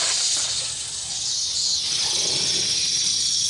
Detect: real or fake real